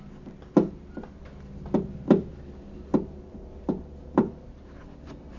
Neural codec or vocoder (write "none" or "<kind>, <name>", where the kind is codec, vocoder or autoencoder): none